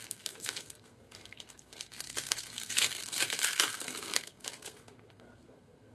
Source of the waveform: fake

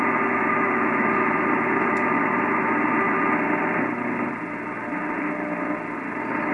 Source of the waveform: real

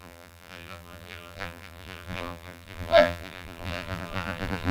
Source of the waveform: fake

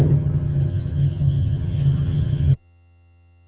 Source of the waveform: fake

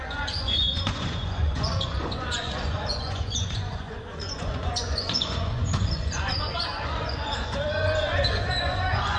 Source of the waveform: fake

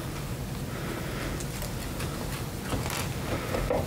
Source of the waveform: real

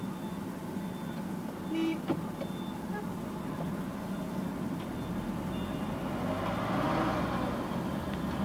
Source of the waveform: real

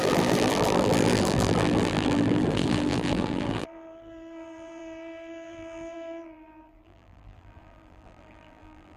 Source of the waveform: fake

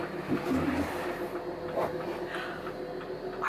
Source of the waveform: real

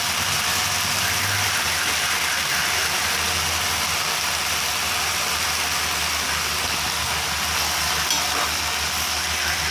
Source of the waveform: real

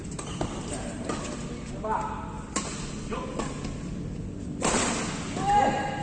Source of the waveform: real